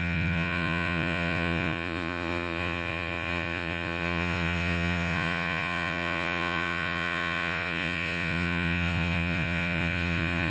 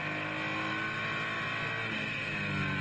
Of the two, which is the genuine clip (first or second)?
second